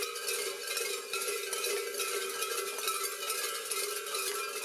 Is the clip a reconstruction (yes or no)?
no